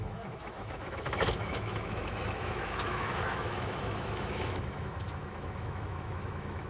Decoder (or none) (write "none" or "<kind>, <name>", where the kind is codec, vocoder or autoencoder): autoencoder, DAC-VAE